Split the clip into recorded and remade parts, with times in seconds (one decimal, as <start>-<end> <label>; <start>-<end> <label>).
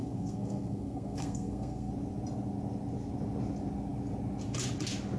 0.0-1.9 remade; 1.9-5.2 recorded